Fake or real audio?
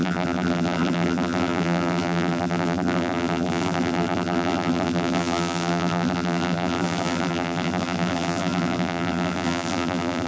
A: fake